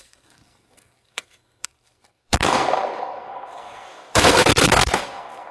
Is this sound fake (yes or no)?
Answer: yes